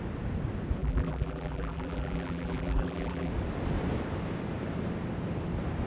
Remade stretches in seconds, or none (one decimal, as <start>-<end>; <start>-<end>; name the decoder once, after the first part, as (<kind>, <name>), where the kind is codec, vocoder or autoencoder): 0.8-3.3 (vocoder, BigVGAN v2)